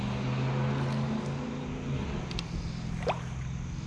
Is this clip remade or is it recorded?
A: recorded